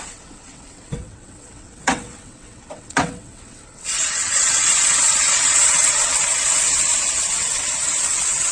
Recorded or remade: remade